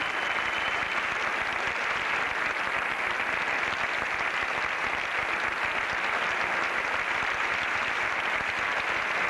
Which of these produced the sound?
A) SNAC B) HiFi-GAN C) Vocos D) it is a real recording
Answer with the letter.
D